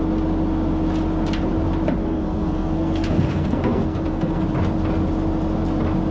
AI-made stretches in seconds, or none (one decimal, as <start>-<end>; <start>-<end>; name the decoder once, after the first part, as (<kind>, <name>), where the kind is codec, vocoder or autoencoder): 2.0-4.4 (codec, SNAC)